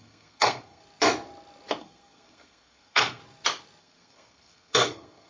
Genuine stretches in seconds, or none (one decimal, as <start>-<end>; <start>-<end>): 0.8-1.8; 3.2-3.8